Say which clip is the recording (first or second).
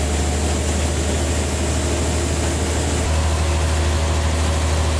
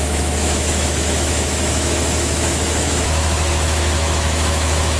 first